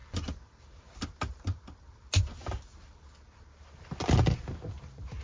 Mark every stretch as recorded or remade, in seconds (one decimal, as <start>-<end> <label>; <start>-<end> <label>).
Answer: 0.0-5.2 recorded